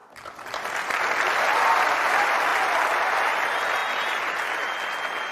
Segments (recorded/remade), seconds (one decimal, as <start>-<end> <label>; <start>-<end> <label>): 0.0-5.3 recorded